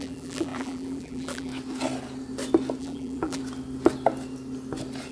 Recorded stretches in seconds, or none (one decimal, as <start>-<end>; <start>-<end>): 1.5-2.8; 3.4-5.1

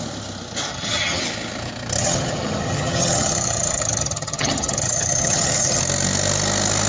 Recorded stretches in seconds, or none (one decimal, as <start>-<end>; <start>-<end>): 0.0-0.7; 1.2-2.0; 5.8-6.9

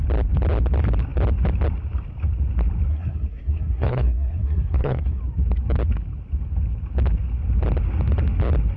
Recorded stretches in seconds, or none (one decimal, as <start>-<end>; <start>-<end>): 0.0-2.9; 5.2-8.8